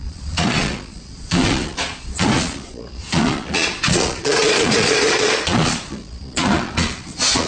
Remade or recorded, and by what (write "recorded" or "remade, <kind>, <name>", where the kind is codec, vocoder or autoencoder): remade, vocoder, Vocos